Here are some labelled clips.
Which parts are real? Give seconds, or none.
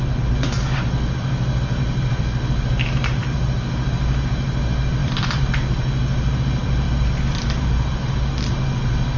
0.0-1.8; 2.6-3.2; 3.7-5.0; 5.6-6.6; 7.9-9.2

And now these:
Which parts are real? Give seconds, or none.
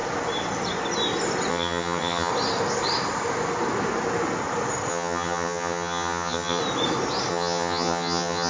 0.0-1.5; 2.3-4.9; 6.6-7.3